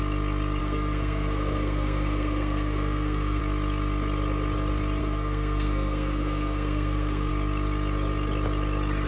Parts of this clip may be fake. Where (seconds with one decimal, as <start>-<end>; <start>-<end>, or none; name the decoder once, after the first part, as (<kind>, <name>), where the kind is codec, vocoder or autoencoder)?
0.6-3.4 (codec, SNAC); 5.0-7.3